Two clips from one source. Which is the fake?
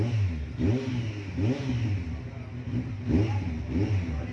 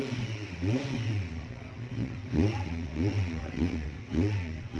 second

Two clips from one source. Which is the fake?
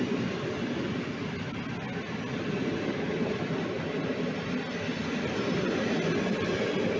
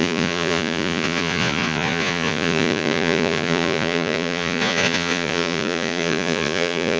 second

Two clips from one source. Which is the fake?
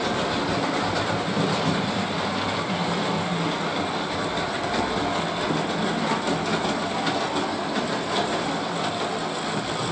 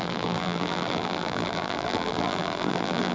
second